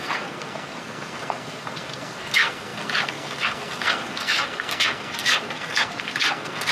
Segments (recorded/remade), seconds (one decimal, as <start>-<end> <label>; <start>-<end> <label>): 0.0-6.7 remade